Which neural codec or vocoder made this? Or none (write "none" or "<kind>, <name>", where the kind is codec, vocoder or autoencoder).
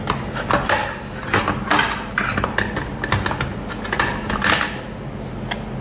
none